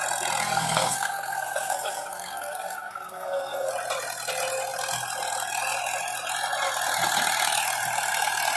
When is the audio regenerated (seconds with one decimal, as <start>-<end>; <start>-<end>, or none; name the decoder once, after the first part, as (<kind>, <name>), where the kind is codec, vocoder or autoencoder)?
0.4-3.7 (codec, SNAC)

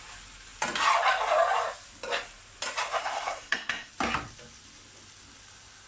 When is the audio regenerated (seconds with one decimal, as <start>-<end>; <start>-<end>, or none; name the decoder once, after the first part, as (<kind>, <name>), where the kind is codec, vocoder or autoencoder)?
3.0-3.9 (codec, SNAC)

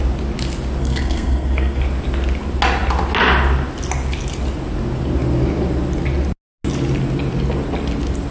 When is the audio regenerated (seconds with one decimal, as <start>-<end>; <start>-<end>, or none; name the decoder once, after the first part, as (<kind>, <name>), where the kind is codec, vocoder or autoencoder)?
0.8-1.8 (codec, SNAC)

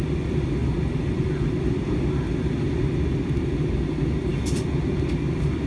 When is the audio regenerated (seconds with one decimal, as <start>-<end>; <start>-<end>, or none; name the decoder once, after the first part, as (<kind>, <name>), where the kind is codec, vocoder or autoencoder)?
none

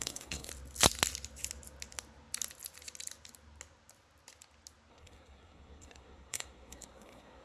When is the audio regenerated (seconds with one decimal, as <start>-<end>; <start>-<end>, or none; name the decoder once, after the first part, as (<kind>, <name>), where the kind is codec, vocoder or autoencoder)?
0.0-0.5 (codec, SNAC); 4.9-7.4